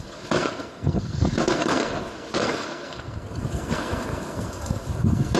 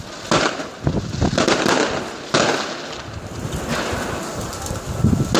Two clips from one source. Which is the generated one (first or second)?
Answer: first